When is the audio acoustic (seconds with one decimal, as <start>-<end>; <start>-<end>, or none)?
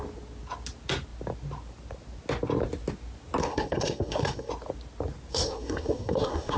0.0-3.4; 4.5-5.3